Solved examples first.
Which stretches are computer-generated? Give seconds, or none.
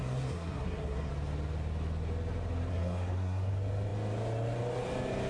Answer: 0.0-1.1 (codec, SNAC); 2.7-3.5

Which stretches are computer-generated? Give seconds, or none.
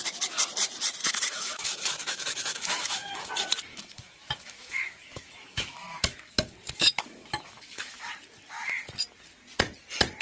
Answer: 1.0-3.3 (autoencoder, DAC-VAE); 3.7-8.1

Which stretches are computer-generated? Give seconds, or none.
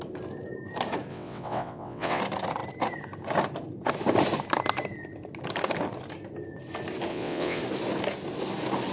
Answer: 1.1-2.2 (vocoder, WaveNeXt); 7.1-7.6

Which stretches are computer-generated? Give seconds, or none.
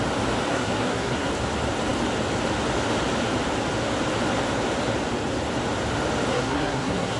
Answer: 0.5-1.3 (codec, SNAC); 6.3-7.2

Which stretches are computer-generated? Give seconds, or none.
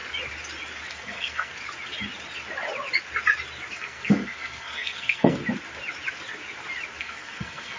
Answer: 0.9-1.5 (codec, SNAC); 3.7-5.4; 7.0-7.8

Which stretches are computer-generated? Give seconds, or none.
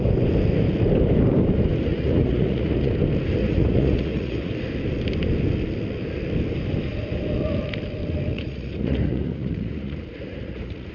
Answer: 1.9-2.9 (vocoder, Vocos); 3.4-4.5; 8.3-10.9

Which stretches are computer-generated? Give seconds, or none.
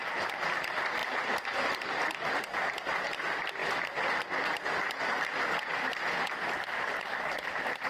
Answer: 0.0-0.6 (vocoder, BigVGAN v2); 1.0-2.4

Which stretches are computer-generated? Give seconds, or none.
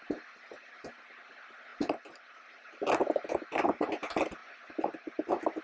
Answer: none